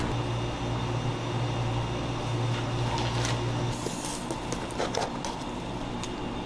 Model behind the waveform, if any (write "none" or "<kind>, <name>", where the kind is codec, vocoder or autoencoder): none